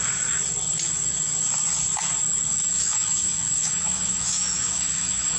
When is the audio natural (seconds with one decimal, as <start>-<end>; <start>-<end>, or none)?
0.0-2.5